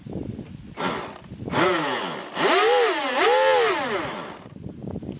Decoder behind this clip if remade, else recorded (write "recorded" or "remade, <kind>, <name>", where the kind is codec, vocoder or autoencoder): recorded